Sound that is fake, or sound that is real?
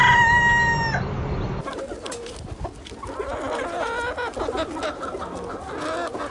real